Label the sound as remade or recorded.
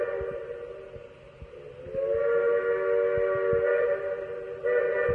recorded